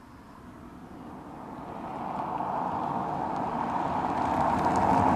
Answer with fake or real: real